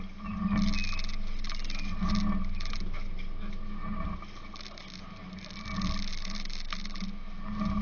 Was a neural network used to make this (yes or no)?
no